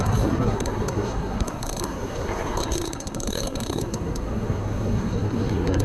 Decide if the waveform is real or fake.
fake